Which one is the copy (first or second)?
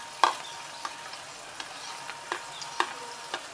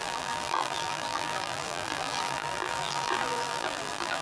second